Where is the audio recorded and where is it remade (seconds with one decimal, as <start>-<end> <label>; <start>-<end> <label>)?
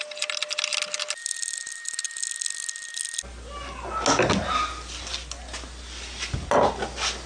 0.0-7.3 recorded